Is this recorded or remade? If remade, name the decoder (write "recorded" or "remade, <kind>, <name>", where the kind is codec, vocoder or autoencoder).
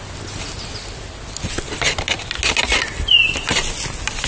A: recorded